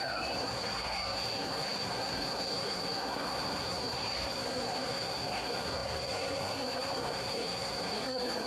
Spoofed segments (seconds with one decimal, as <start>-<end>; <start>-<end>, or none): 0.0-8.5